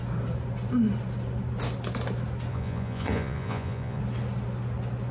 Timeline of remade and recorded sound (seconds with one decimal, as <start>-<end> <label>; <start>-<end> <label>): 0.0-2.5 recorded; 2.5-4.0 remade; 4.0-5.1 recorded

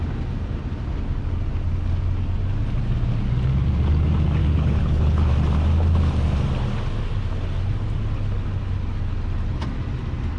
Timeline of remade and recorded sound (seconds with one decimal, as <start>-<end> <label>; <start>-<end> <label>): 0.0-4.4 recorded; 4.4-5.3 remade; 5.3-10.4 recorded

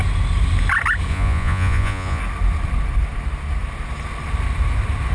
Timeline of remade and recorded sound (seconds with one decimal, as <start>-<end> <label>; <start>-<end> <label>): 0.0-1.1 recorded; 1.1-2.2 remade; 2.2-5.1 recorded